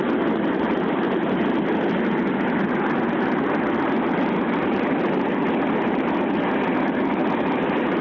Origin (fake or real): real